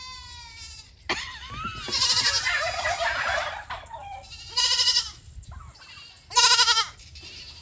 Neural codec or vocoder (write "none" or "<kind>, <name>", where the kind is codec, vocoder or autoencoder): none